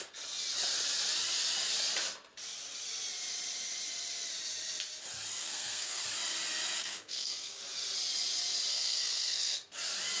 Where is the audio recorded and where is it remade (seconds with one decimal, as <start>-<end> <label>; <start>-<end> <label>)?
0.0-5.4 recorded; 5.4-6.0 remade; 6.0-6.8 recorded; 6.8-7.6 remade; 7.6-8.7 recorded; 8.7-9.7 remade; 9.7-10.2 recorded